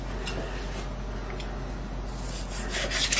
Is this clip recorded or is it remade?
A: recorded